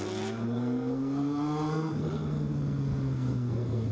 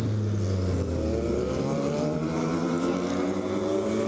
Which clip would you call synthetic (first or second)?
first